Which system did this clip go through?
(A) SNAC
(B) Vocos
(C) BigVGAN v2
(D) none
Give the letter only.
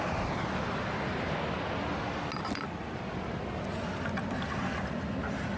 D